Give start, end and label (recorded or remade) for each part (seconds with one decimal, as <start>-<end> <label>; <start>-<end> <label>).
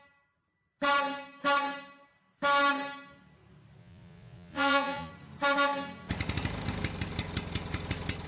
0.0-3.8 recorded; 3.8-5.1 remade; 5.1-8.3 recorded